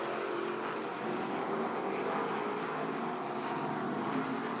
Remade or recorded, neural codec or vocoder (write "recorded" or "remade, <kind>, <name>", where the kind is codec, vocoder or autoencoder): recorded